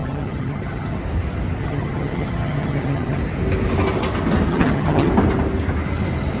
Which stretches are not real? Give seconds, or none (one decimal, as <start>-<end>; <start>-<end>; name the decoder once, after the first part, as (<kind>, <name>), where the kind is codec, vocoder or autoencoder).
0.0-1.0 (vocoder, HiFi-GAN); 1.6-3.2; 4.5-5.1